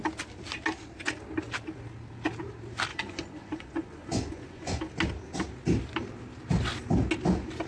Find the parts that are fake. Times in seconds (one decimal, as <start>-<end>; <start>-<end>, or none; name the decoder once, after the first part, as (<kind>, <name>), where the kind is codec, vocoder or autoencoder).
2.9-4.8 (vocoder, Vocos)